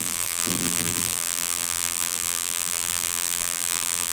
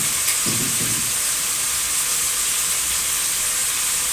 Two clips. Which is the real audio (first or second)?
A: second